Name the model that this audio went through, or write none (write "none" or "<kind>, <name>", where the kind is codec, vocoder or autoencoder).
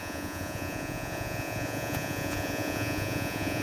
vocoder, Vocos